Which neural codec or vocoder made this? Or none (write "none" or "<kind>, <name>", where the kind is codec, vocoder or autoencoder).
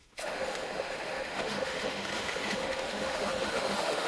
autoencoder, DAC-VAE